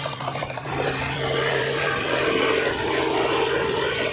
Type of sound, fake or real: fake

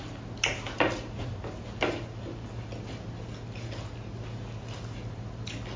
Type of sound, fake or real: real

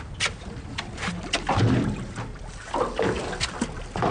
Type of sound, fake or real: real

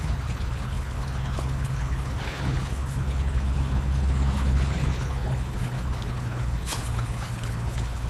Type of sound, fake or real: fake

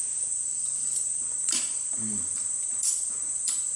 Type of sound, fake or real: fake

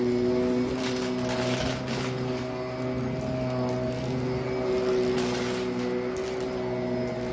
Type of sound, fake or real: real